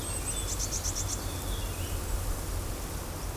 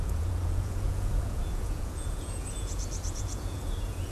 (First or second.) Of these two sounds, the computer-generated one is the second